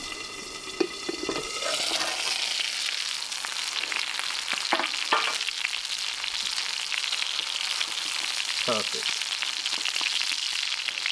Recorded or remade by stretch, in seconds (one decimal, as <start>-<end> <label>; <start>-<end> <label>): 0.0-11.1 recorded